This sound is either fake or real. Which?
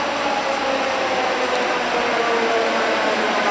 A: real